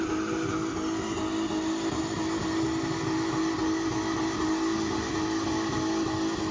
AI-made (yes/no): no